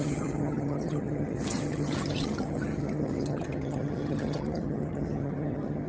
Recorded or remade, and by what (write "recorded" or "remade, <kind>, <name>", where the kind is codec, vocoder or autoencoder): remade, vocoder, HiFi-GAN